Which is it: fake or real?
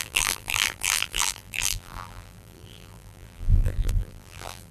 fake